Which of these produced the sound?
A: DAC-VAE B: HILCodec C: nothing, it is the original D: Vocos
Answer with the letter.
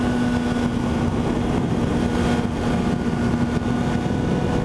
C